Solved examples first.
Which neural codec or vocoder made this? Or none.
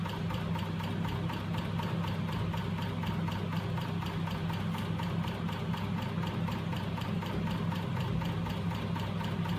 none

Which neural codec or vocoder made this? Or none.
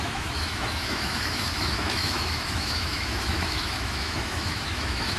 autoencoder, DAC-VAE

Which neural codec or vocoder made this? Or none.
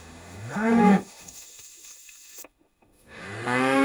autoencoder, DAC-VAE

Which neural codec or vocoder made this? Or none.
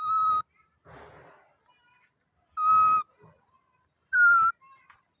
none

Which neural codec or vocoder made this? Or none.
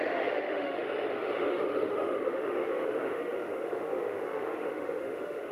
autoencoder, DAC-VAE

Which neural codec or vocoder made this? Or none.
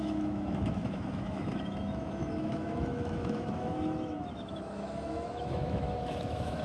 autoencoder, DAC-VAE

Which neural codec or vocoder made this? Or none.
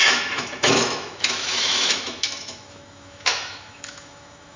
autoencoder, DAC-VAE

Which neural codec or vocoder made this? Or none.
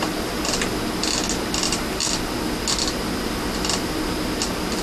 none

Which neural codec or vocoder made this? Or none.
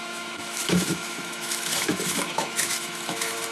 autoencoder, DAC-VAE